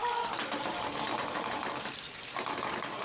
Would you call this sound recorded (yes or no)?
yes